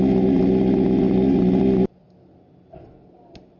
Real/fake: real